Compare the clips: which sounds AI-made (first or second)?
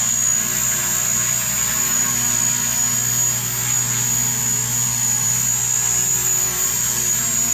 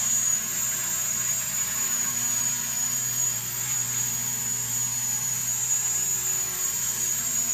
second